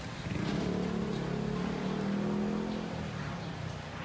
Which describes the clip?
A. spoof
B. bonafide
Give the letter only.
B